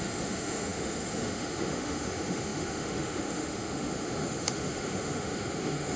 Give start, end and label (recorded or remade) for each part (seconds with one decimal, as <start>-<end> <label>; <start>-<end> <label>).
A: 0.0-6.0 remade